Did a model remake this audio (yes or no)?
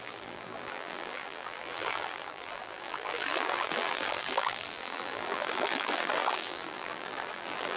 yes